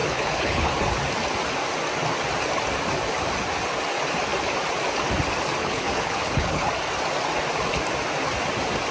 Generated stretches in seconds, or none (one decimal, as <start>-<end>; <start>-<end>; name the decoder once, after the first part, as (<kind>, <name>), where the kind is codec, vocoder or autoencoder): 0.0-0.7 (codec, HILCodec); 5.6-6.7